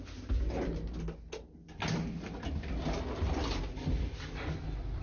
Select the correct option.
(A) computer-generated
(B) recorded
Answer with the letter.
B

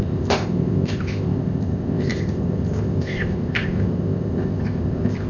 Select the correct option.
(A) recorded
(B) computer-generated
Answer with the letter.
B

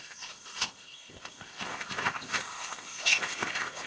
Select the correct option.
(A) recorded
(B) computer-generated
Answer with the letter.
B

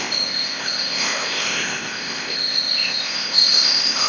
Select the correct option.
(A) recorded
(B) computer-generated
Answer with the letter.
B